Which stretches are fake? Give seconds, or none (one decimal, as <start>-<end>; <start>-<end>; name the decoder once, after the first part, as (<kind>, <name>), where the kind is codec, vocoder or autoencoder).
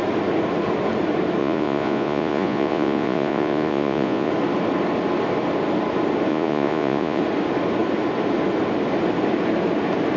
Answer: 1.4-4.3 (vocoder, Vocos); 6.3-7.2